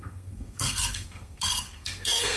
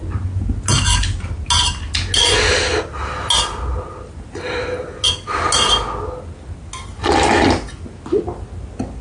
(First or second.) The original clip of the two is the second